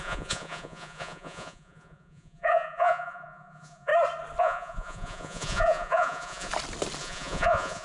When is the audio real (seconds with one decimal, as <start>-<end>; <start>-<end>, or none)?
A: 3.9-4.4; 6.5-7.0